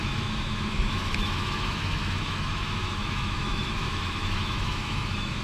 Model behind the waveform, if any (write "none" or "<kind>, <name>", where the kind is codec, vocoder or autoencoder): autoencoder, DAC-VAE